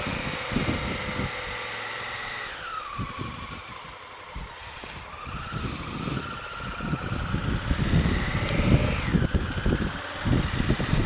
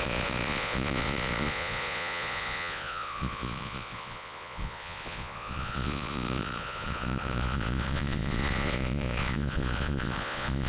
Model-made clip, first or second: second